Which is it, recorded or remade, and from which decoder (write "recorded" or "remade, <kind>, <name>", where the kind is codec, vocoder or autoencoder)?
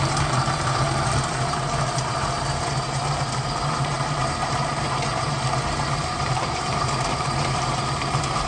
remade, vocoder, BigVGAN v2